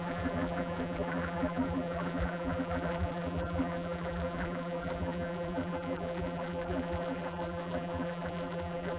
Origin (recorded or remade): remade